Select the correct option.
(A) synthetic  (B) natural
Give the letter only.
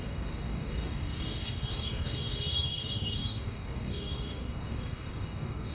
A